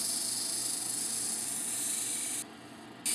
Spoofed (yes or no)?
no